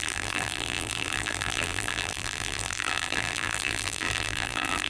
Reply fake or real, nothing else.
fake